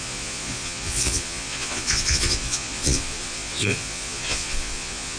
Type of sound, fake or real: fake